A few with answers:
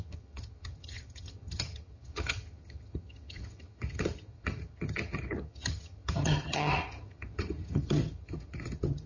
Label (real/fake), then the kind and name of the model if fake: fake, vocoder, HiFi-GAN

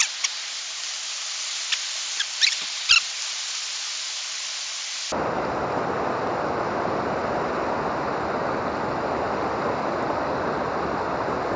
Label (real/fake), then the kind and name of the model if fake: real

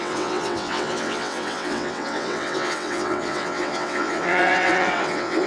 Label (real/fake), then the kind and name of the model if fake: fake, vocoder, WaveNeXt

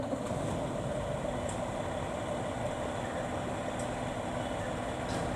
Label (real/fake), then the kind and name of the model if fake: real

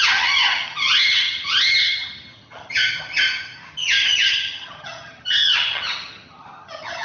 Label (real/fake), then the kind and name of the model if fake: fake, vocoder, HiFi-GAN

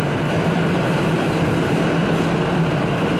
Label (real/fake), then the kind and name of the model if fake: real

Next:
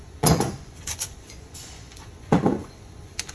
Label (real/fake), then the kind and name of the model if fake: fake, vocoder, Vocos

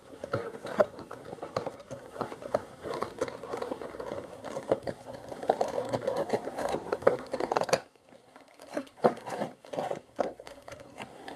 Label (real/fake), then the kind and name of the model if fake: fake, codec, SNAC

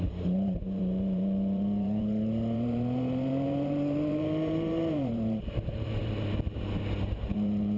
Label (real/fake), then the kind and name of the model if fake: fake, vocoder, BigVGAN v2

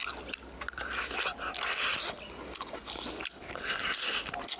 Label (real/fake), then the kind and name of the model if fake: real